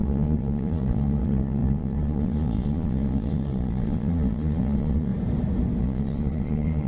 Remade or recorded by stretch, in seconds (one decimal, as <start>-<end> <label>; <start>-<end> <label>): 0.0-5.1 remade; 5.1-5.8 recorded; 5.8-6.9 remade